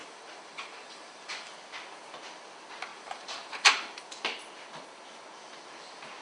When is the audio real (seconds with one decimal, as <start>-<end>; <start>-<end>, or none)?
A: 1.5-2.9; 4.0-6.2